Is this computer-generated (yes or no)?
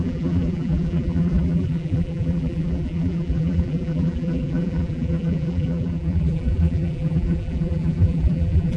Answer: yes